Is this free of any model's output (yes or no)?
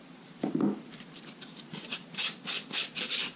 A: no